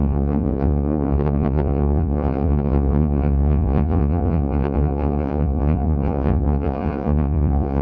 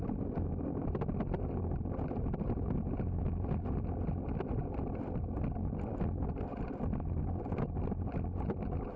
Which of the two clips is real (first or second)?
second